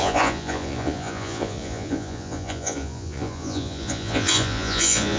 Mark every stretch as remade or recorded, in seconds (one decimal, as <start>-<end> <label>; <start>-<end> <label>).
0.0-5.2 remade